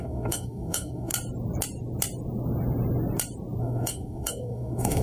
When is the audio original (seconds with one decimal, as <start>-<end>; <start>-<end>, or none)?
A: 1.1-3.6